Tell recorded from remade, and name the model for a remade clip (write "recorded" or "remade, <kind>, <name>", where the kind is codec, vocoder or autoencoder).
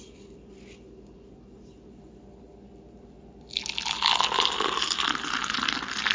recorded